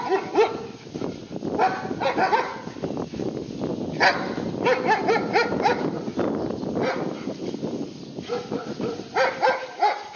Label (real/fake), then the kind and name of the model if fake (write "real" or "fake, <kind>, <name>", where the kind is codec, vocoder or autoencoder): real